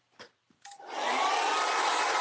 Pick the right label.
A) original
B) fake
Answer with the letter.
A